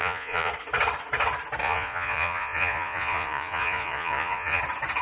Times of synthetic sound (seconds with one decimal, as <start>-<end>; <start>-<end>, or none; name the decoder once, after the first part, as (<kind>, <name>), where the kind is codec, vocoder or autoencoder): 0.0-0.5 (vocoder, Vocos); 1.6-4.6